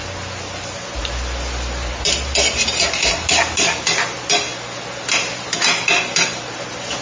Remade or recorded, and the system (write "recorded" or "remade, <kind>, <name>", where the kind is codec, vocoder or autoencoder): recorded